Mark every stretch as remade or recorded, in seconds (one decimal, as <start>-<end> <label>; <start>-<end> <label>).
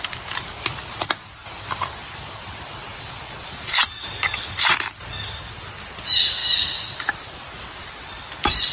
0.0-1.4 recorded; 1.4-2.1 remade; 2.1-6.4 recorded; 6.4-8.7 remade